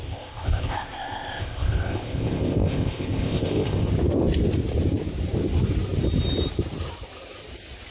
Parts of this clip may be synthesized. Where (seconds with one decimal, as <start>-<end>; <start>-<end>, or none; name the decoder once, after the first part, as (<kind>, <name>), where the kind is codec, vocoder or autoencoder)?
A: 0.0-3.9 (codec, ZipCodec)